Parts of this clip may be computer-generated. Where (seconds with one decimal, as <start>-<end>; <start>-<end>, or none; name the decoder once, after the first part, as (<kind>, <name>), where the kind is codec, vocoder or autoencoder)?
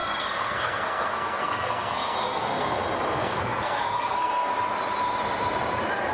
0.0-2.8 (codec, SNAC); 3.2-4.5